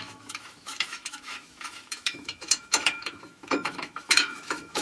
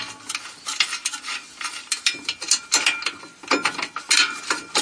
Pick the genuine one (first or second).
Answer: second